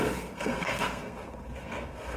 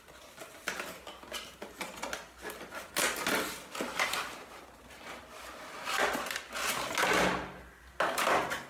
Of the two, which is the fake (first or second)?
first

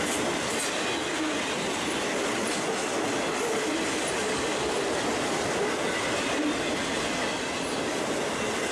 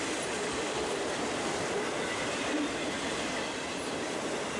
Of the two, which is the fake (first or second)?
second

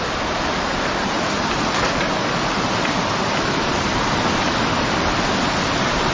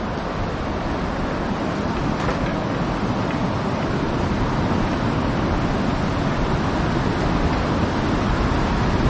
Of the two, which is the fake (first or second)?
first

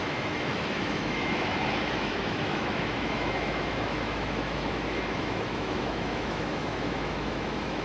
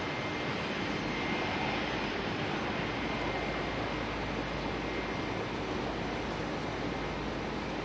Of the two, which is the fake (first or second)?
first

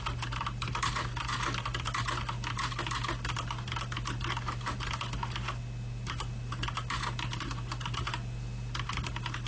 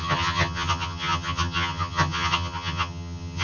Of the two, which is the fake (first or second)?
second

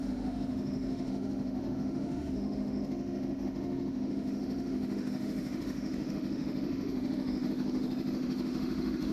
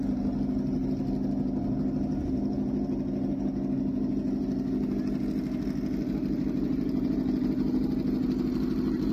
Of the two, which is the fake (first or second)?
first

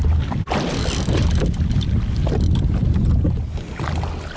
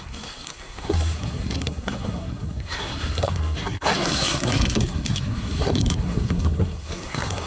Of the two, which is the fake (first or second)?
second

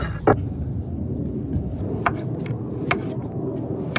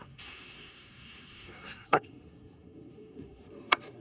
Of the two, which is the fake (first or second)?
second